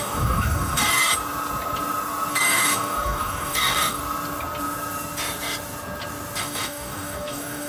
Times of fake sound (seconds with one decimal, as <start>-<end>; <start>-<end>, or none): 0.0-1.1; 2.3-4.0; 6.4-7.7